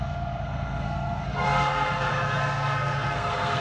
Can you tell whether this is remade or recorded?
remade